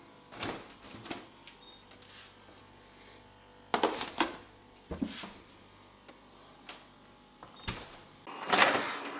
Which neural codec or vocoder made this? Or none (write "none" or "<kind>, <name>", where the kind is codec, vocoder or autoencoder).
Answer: none